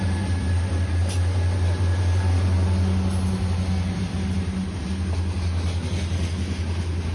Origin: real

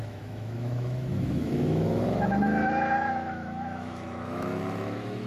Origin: fake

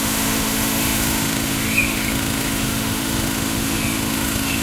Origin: fake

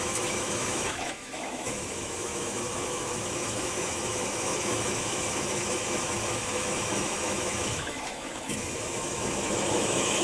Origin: fake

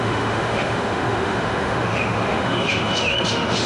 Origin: fake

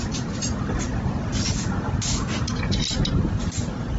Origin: real